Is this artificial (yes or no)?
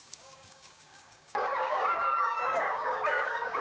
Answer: yes